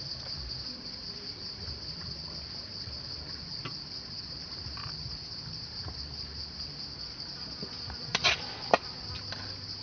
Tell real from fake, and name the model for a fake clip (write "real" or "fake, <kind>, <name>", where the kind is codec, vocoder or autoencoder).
real